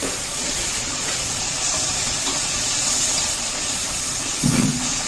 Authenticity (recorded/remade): remade